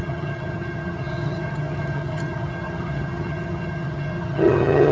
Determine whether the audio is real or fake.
fake